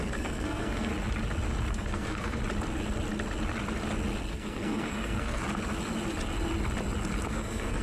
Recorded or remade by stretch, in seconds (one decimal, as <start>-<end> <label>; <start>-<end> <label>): 0.0-0.9 remade; 0.9-1.7 recorded; 1.7-2.4 remade; 2.4-4.3 recorded; 4.3-5.4 remade; 5.4-7.3 recorded; 7.3-7.8 remade